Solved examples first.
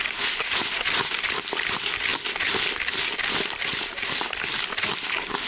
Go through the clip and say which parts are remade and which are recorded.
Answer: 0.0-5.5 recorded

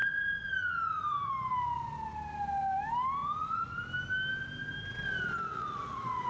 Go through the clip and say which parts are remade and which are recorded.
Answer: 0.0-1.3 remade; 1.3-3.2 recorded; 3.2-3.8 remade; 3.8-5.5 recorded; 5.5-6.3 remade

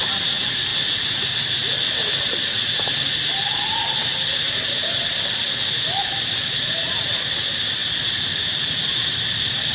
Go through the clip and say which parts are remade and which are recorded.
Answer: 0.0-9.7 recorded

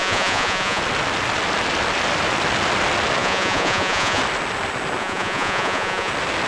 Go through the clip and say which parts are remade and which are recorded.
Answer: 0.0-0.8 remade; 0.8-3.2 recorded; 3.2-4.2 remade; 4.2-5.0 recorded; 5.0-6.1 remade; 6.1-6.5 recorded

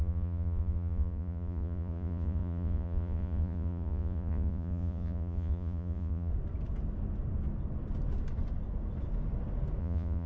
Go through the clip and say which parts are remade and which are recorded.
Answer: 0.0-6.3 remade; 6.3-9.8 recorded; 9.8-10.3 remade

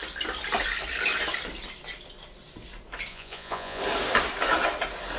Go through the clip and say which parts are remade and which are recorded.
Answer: 0.0-3.1 recorded; 3.1-3.8 remade; 3.8-5.2 recorded

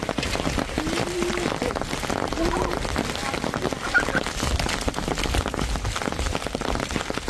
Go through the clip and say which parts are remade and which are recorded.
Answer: 0.0-7.3 recorded

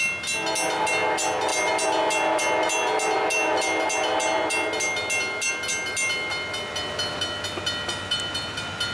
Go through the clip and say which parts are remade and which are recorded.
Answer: 0.0-8.9 recorded